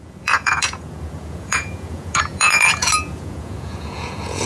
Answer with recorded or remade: remade